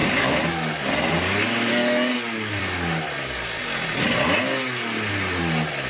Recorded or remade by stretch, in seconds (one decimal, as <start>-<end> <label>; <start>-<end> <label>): 0.0-1.7 recorded; 1.7-2.6 remade; 2.6-5.9 recorded